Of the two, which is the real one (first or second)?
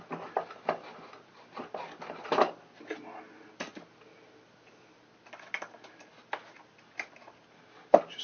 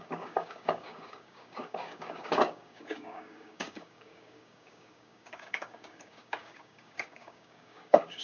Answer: first